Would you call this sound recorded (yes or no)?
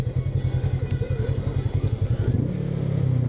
yes